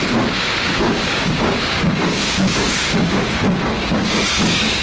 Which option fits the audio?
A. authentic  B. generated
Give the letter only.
B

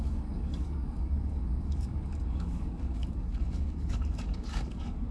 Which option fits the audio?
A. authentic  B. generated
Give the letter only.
B